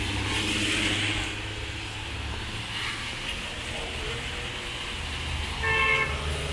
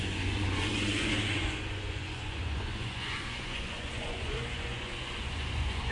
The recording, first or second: first